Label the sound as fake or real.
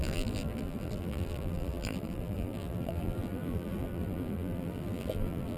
fake